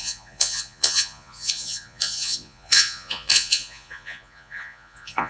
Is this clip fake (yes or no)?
yes